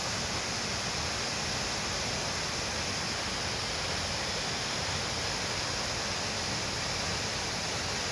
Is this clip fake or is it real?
real